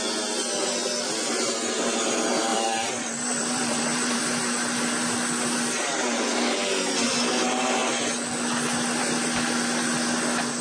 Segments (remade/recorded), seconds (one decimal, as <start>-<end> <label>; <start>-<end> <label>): 0.0-2.5 recorded; 2.5-4.2 remade; 4.2-10.6 recorded